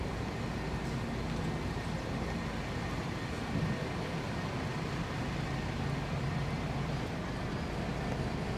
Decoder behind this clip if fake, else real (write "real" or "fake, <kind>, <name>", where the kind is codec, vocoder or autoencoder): real